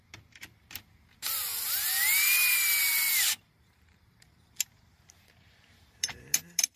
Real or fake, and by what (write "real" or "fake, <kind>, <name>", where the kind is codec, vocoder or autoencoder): fake, vocoder, BigVGAN v2